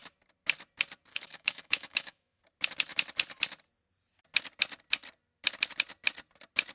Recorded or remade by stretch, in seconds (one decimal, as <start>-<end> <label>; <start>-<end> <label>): 0.0-1.1 recorded; 1.1-2.4 remade; 2.4-6.7 recorded